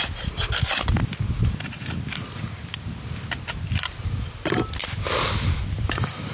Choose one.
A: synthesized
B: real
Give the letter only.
B